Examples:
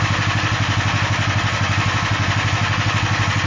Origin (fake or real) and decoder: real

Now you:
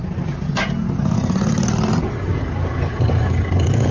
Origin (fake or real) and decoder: real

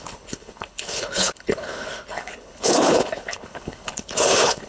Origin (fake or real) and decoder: fake, codec, HILCodec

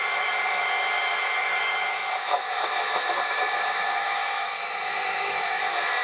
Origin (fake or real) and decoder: fake, autoencoder, DAC-VAE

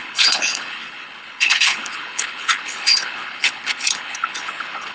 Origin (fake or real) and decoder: fake, codec, HILCodec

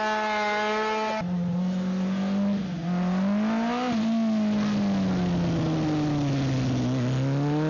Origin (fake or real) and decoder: real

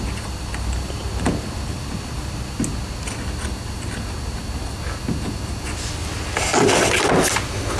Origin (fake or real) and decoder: real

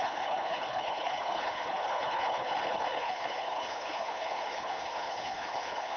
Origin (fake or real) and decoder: fake, codec, HILCodec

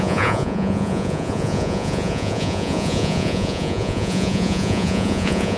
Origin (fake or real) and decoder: fake, vocoder, Vocos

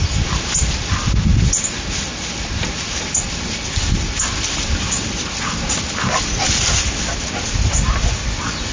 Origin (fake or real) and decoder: real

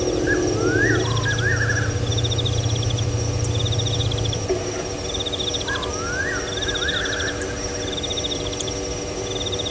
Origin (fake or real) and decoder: real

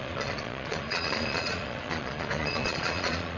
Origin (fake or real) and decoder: fake, vocoder, Vocos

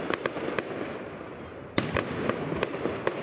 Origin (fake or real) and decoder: real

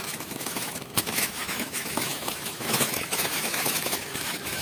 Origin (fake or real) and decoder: fake, autoencoder, DAC-VAE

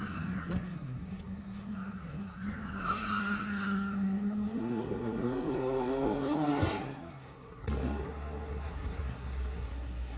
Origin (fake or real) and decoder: fake, codec, SNAC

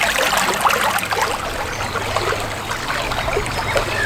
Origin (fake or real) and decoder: real